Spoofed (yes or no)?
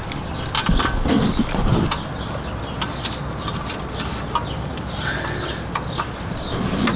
no